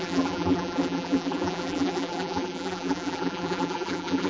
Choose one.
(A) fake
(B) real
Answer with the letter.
A